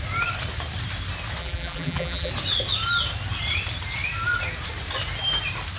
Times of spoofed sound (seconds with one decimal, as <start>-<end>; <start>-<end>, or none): 1.4-2.3

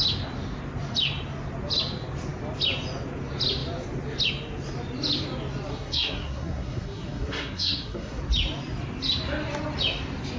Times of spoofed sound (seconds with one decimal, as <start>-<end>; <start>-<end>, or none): 5.7-8.2

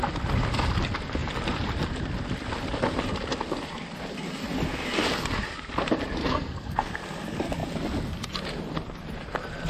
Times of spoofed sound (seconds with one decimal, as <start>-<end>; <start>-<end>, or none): 6.2-6.9

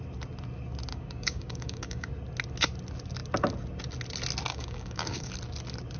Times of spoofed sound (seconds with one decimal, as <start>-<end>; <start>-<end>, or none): 0.9-2.1; 4.5-5.3

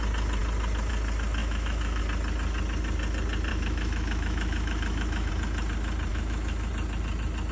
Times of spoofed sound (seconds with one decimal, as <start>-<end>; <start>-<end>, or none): 1.4-2.0; 3.5-5.3; 6.1-6.7